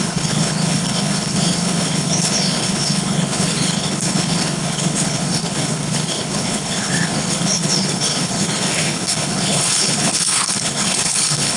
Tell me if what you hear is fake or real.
fake